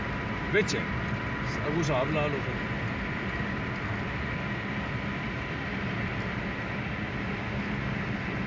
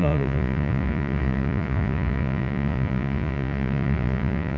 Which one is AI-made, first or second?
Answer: second